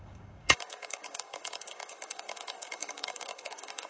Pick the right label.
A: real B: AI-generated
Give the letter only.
B